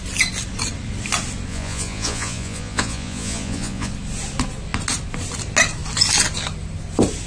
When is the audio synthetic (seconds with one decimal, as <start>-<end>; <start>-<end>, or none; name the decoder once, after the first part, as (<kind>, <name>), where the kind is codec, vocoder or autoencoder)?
1.5-3.9 (vocoder, Vocos)